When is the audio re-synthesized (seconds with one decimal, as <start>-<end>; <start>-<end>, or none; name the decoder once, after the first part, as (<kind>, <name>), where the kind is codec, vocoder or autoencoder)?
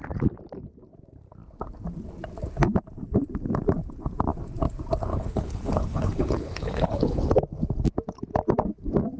5.1-7.3 (codec, HILCodec)